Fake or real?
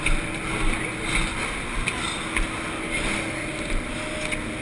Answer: real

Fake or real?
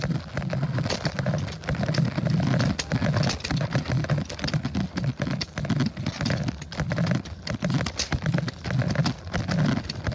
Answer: real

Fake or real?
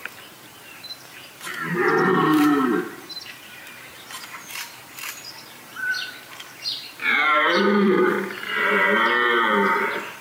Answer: fake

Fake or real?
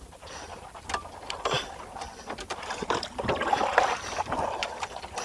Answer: fake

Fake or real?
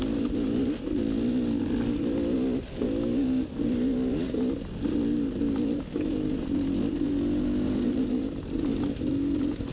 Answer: real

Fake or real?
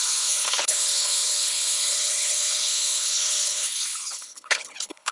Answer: fake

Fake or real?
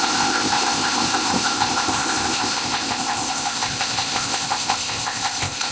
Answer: fake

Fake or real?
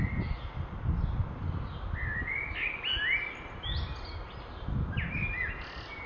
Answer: real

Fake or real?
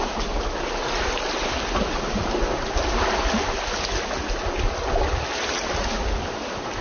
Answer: real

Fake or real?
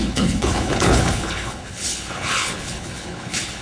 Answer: fake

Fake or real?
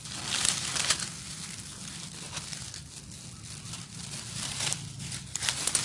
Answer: real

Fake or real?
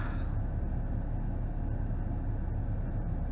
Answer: real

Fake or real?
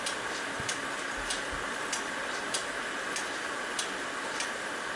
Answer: real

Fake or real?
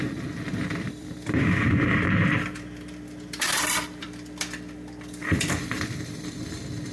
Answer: fake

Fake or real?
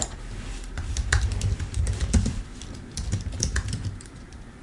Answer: fake